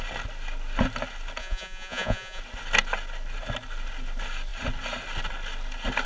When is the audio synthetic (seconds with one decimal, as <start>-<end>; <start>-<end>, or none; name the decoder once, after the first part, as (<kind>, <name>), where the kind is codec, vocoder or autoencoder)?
1.4-2.4 (vocoder, Vocos)